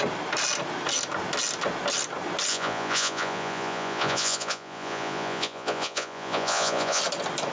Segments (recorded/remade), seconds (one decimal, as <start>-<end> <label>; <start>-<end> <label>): 0.0-2.5 recorded; 2.5-7.0 remade; 7.0-7.5 recorded